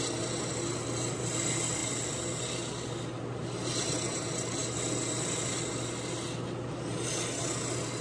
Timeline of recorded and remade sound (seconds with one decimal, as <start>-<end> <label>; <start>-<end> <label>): 0.0-8.0 recorded